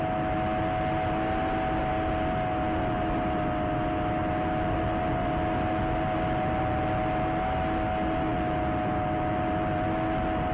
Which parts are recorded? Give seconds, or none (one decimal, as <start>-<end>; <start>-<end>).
0.0-10.5